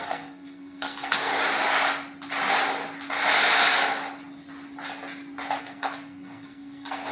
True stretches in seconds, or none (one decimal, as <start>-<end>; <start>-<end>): 1.3-5.6